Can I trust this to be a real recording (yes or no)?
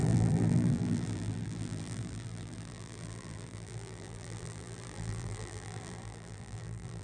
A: no